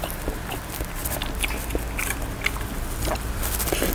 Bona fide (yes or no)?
yes